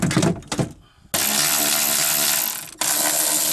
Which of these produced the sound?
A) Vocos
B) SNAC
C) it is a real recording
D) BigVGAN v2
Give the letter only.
C